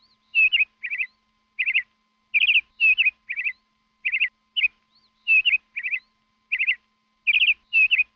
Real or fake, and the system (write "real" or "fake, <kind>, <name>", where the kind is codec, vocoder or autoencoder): real